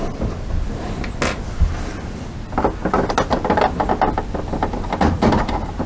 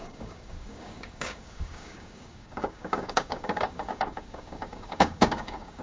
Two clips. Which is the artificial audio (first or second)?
second